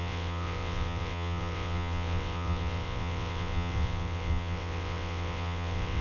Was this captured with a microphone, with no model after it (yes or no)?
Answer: no